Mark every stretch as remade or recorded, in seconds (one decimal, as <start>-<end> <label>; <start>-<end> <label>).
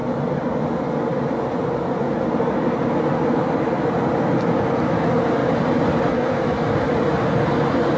0.0-5.4 recorded; 5.4-7.0 remade; 7.0-8.0 recorded